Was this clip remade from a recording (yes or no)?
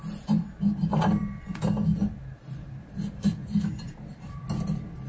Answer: no